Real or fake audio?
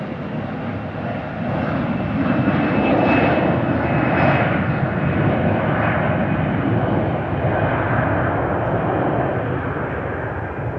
real